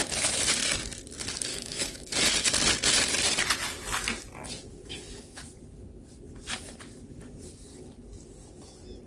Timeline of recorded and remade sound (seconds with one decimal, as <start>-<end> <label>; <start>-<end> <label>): 0.0-1.5 recorded; 1.5-2.1 remade; 2.1-4.7 recorded; 4.7-5.4 remade; 5.4-9.1 recorded